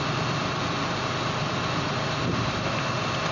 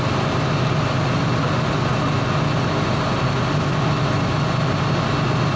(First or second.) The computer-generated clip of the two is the first